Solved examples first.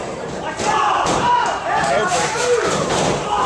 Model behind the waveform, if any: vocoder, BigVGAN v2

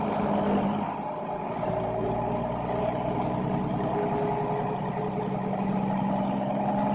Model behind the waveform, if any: none